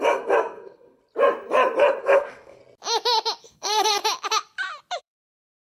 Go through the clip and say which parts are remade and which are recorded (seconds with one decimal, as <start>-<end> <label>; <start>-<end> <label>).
0.0-1.0 remade; 1.0-2.0 recorded; 2.0-2.6 remade; 2.6-3.4 recorded; 3.4-4.0 remade; 4.0-5.0 recorded; 5.0-5.7 remade